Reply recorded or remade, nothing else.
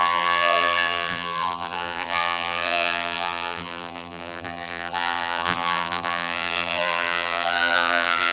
remade